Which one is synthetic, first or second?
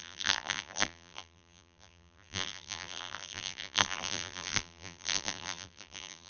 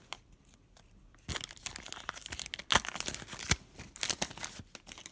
first